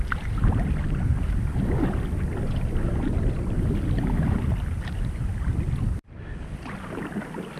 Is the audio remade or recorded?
recorded